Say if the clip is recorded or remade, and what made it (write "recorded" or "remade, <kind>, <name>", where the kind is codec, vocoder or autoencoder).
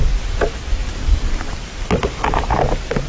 recorded